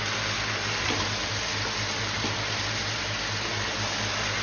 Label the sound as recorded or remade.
recorded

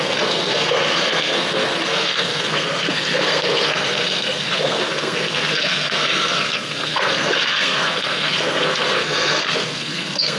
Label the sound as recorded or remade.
remade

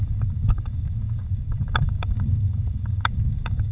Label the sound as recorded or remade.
remade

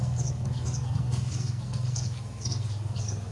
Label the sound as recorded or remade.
remade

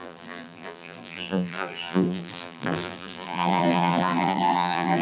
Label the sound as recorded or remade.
remade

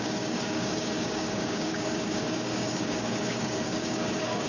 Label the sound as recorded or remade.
remade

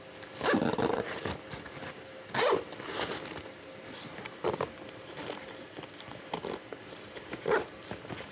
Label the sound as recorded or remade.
remade